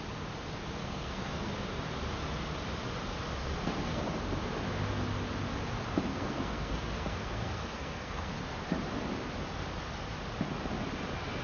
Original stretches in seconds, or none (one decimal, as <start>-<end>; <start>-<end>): 0.0-0.8; 1.5-3.4; 4.0-6.1; 8.3-11.4